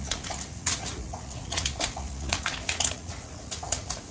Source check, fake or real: fake